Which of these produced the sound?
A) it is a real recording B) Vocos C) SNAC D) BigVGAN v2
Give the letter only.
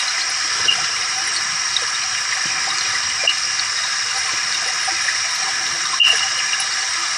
A